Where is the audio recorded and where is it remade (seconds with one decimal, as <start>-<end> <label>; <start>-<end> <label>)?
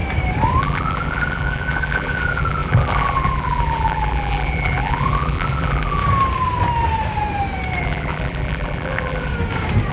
0.0-0.6 recorded; 0.6-6.0 remade; 6.0-7.8 recorded; 7.8-9.3 remade; 9.3-9.9 recorded